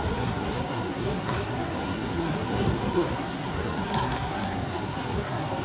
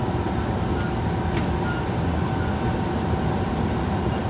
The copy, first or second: first